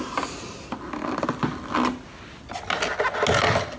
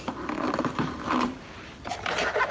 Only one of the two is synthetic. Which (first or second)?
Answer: second